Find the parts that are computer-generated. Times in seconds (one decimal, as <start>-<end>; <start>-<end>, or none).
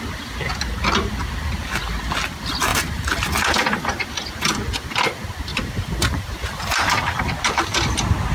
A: 2.7-4.9; 5.5-7.2